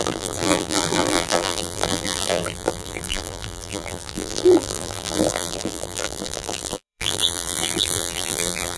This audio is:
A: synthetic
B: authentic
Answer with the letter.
A